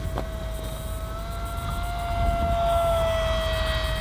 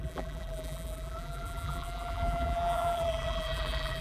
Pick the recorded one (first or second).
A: first